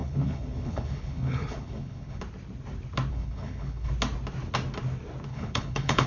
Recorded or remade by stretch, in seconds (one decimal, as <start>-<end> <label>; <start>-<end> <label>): 0.0-2.2 remade; 2.2-3.1 recorded; 3.1-3.9 remade; 3.9-5.3 recorded; 5.3-6.1 remade